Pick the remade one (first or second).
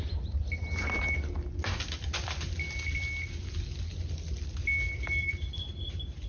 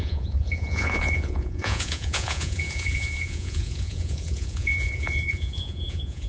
second